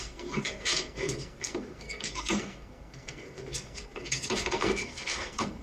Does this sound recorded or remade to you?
remade